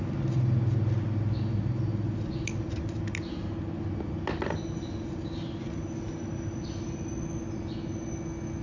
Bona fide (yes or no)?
yes